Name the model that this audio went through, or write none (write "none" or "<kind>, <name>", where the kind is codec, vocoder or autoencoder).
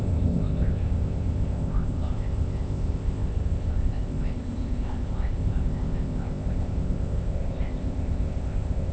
codec, ZipCodec